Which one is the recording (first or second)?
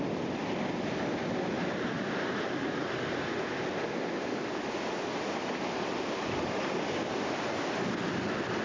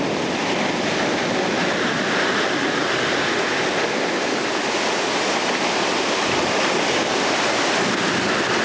first